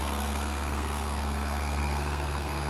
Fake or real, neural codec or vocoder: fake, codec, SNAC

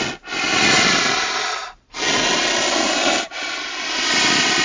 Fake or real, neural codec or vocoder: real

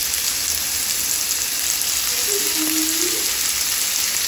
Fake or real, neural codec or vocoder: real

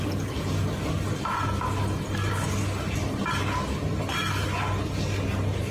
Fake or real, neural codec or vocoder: real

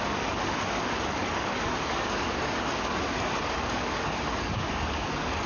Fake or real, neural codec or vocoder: fake, codec, DAC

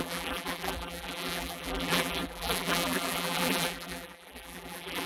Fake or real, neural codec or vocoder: fake, vocoder, BigVGAN v2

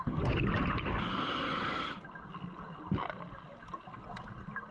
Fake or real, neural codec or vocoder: real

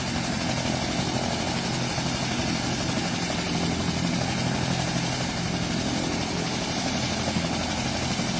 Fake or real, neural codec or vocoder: real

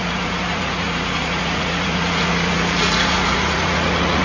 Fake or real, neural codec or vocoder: fake, vocoder, Vocos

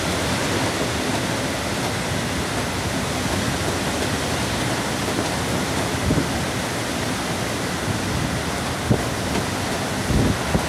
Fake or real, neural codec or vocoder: real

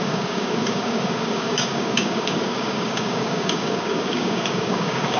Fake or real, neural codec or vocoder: fake, codec, DAC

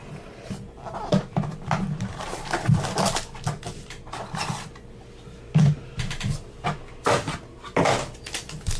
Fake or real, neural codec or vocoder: real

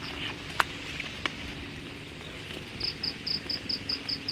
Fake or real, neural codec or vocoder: fake, vocoder, BigVGAN v2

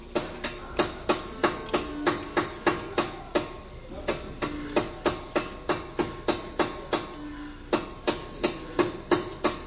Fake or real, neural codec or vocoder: real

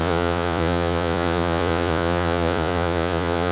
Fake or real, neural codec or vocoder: fake, vocoder, Vocos